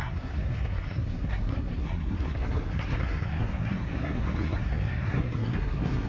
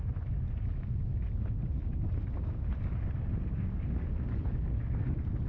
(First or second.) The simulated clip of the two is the first